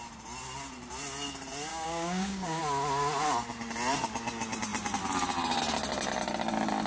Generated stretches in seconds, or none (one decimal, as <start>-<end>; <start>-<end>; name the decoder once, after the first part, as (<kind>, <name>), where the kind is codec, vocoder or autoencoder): 1.7-2.6 (codec, DAC)